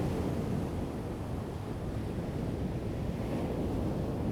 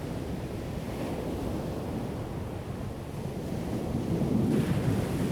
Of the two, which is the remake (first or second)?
second